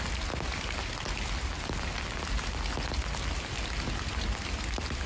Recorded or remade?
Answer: recorded